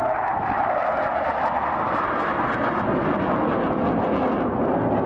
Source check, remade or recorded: recorded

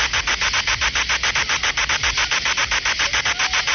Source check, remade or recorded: recorded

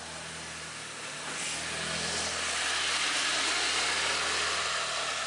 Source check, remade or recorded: recorded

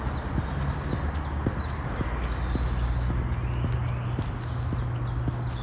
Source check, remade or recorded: recorded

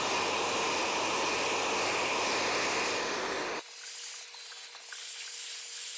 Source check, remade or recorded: recorded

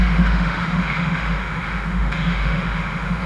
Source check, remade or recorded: remade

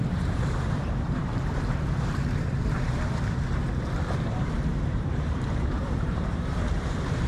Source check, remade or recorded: remade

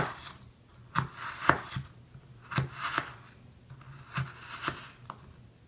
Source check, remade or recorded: recorded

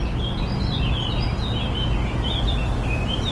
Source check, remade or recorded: recorded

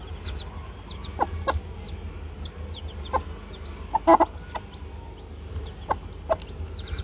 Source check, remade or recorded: recorded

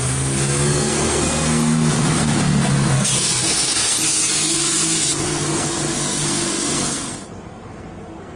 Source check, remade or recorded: remade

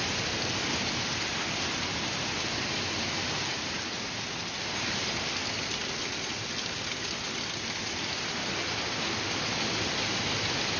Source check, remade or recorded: recorded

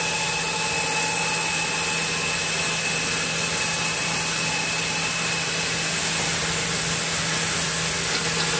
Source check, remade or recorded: recorded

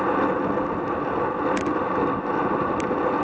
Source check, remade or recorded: recorded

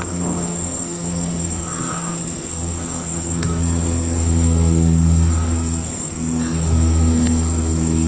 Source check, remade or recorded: remade